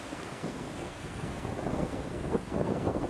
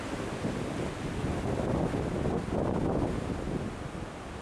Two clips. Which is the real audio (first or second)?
second